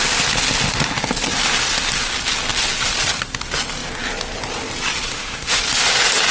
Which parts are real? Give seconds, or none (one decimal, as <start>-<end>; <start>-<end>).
0.0-5.1; 5.6-6.3